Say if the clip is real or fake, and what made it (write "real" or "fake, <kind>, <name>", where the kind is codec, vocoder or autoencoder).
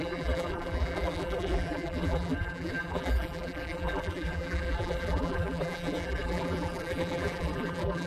fake, vocoder, BigVGAN v2